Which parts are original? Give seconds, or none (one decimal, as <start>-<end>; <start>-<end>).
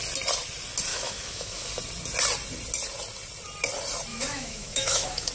0.0-0.9; 1.7-4.1